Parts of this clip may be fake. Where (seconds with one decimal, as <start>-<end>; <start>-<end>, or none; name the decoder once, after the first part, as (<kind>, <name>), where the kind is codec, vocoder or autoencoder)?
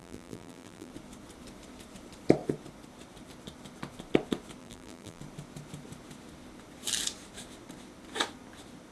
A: 0.0-0.9 (vocoder, BigVGAN v2); 4.6-5.2